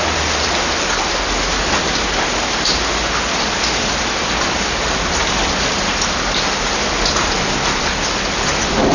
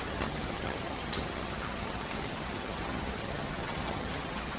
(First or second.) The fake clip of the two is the second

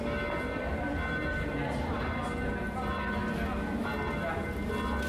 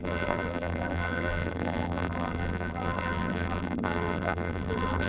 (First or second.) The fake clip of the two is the second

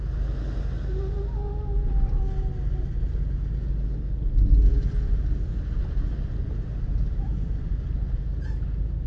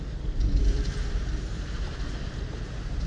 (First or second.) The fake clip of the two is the second